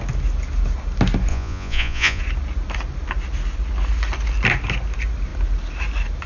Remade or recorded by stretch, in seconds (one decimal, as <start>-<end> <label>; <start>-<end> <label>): 0.0-1.3 recorded; 1.3-2.2 remade; 2.2-6.3 recorded